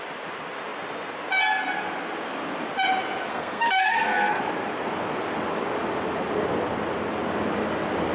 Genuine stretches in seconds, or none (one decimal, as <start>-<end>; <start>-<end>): 0.0-3.3; 4.4-8.1